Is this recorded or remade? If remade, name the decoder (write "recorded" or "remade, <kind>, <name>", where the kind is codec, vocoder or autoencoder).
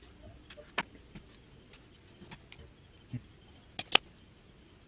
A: recorded